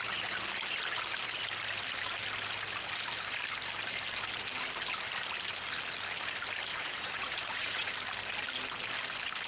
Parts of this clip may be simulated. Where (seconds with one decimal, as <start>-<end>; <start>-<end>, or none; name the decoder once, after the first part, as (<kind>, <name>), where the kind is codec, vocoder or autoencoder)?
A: 6.7-7.9 (vocoder, Vocos)